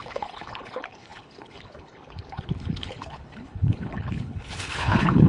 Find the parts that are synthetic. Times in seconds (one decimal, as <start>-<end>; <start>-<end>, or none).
0.0-5.3